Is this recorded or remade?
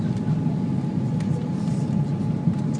recorded